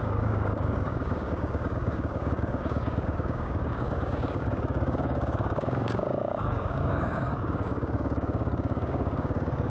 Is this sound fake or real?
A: fake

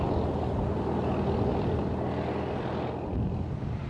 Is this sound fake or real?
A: real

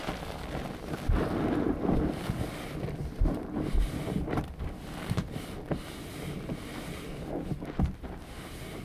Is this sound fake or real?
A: real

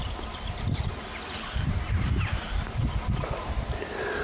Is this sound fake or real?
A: real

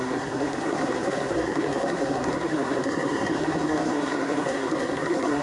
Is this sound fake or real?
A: fake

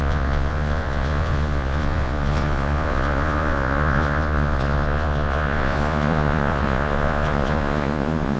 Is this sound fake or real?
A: fake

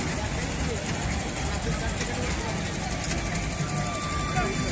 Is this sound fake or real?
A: real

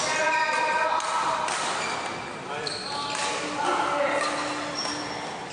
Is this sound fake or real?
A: real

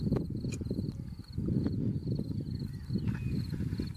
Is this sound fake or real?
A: real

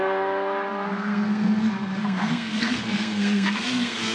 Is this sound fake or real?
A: fake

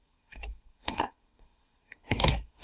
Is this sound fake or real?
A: fake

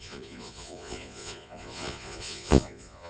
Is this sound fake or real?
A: fake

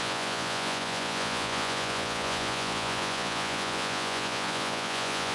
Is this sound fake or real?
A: fake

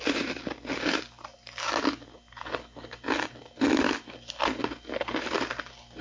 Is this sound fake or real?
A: real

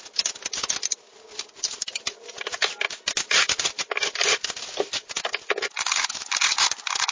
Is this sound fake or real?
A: real